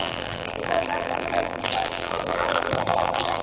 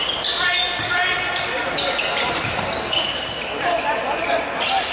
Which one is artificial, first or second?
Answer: first